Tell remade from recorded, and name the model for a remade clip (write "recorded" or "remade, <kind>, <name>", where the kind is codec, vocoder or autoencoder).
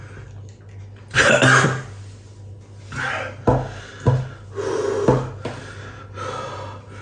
recorded